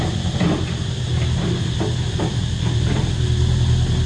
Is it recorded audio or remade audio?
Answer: recorded